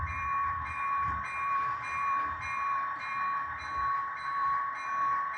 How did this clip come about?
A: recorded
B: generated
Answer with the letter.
B